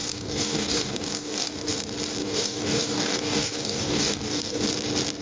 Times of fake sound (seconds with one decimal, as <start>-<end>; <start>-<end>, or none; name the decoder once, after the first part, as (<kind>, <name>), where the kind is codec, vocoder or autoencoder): 0.0-1.7 (codec, DAC); 2.2-4.6